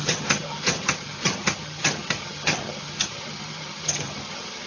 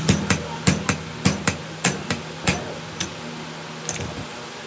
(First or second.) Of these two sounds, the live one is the second